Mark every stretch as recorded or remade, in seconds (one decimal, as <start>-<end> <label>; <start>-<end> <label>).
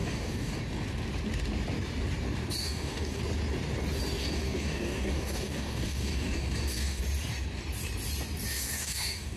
0.0-0.6 remade; 0.6-2.6 recorded; 2.6-3.2 remade; 3.2-4.2 recorded; 4.2-7.0 remade; 7.0-8.5 recorded; 8.5-9.4 remade